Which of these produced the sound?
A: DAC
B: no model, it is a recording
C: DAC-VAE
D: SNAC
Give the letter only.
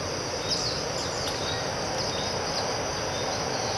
B